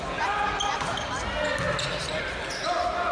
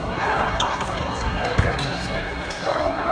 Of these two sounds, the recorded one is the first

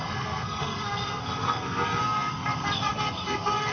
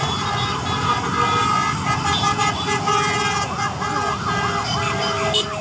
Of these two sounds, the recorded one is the second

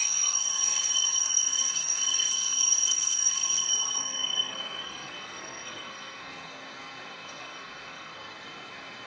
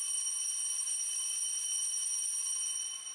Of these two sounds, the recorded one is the second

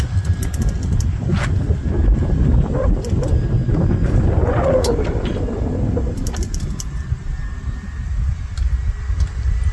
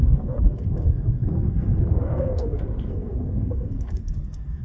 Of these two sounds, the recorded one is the first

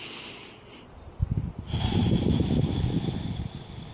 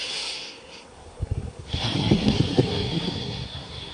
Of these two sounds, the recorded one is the first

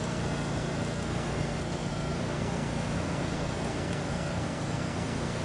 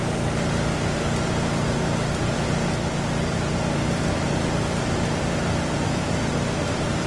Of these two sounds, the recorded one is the second